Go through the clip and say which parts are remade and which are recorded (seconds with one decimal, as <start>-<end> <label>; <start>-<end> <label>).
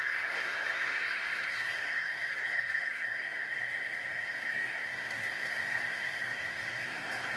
0.0-7.4 remade